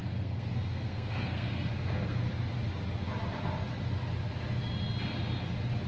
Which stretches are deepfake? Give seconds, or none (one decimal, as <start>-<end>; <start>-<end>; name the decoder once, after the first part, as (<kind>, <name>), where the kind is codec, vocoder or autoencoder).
0.0-2.2 (codec, SNAC)